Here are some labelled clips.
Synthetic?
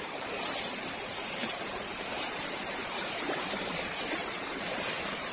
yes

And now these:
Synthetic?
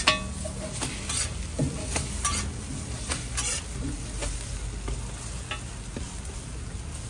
no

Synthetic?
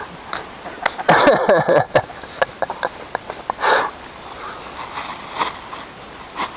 no